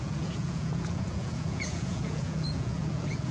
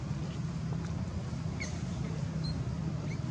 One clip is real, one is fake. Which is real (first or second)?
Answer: second